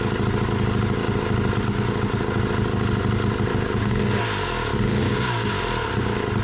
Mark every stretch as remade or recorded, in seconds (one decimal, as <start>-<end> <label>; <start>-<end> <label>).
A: 0.0-3.5 recorded; 3.5-4.0 remade; 4.0-5.0 recorded; 5.0-5.5 remade; 5.5-6.4 recorded